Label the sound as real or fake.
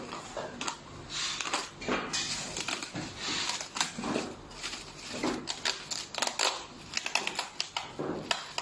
real